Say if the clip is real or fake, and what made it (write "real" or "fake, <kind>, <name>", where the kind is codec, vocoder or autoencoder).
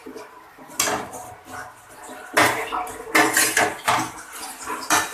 real